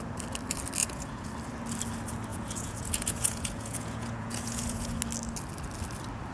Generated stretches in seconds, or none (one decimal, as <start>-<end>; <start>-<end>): 0.8-1.3; 2.3-5.0

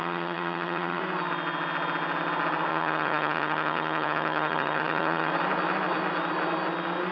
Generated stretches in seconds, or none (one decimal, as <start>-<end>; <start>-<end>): 0.0-1.0; 2.7-5.3